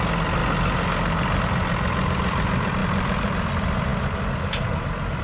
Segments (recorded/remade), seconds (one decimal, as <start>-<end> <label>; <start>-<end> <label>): 0.0-0.4 remade; 0.4-1.4 recorded; 1.4-5.2 remade